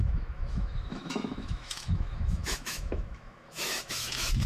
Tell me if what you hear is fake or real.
fake